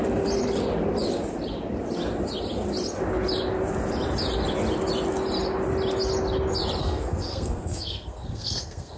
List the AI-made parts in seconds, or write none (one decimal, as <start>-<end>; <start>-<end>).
6.8-9.0